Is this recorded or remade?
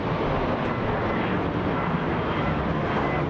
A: recorded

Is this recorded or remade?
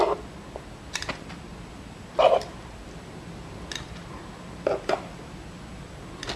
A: recorded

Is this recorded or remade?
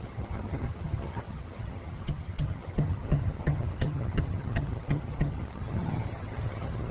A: remade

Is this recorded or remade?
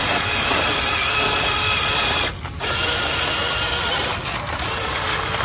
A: recorded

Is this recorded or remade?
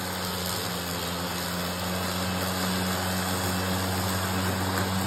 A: recorded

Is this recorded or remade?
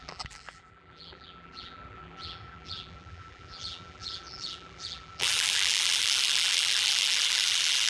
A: remade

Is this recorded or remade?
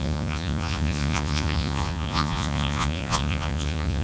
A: remade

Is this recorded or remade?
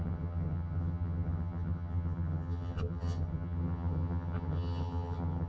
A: remade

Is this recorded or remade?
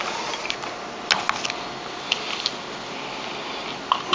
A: recorded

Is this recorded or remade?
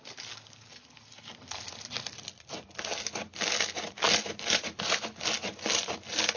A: recorded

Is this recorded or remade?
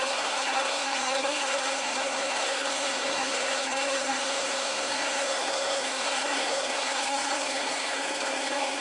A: remade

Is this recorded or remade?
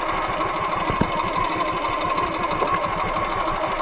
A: recorded